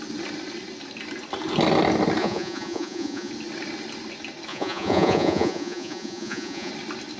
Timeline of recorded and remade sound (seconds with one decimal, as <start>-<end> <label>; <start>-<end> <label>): 0.0-2.2 recorded; 2.2-3.3 remade; 3.3-4.5 recorded; 4.5-6.7 remade; 6.7-7.2 recorded